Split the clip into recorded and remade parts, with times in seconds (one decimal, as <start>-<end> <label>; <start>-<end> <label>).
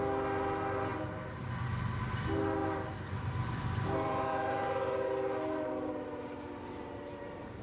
0.0-0.9 recorded; 0.9-1.5 remade; 1.5-2.6 recorded; 2.6-7.6 remade